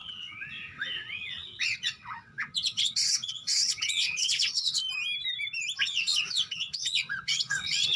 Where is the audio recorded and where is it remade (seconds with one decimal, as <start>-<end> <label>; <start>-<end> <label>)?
0.0-4.8 remade; 4.8-5.8 recorded; 5.8-8.0 remade